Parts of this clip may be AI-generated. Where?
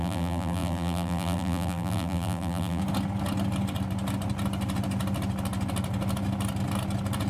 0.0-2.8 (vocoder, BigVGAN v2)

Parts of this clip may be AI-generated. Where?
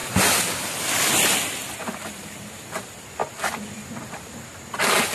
0.0-0.8 (vocoder, BigVGAN v2); 3.2-3.9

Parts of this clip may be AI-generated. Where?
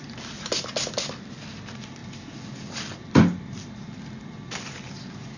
0.0-5.4 (vocoder, BigVGAN v2)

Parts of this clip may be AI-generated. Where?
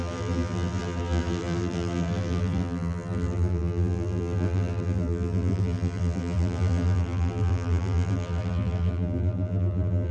0.0-10.1 (vocoder, BigVGAN v2)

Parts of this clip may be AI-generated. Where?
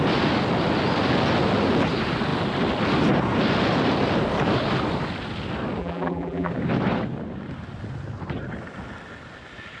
5.8-6.5 (vocoder, BigVGAN v2)